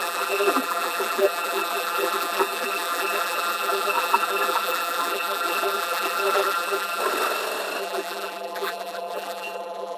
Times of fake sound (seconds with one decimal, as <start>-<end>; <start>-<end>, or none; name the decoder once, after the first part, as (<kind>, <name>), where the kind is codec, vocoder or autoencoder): 0.0-7.0 (vocoder, BigVGAN v2); 7.8-10.0